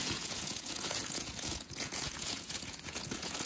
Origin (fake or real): fake